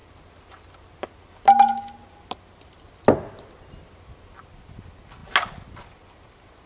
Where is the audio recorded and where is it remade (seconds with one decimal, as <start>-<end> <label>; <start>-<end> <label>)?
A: 0.0-6.7 recorded